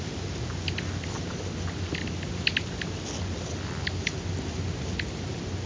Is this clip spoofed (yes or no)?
no